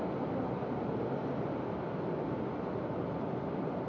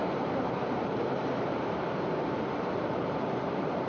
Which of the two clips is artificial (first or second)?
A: second